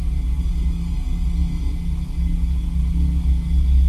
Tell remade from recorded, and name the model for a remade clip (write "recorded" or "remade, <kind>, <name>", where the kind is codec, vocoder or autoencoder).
recorded